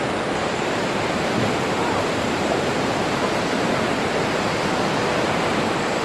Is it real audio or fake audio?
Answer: fake